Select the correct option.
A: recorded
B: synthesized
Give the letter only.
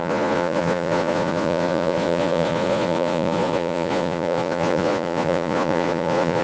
B